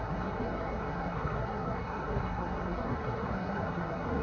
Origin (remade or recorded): remade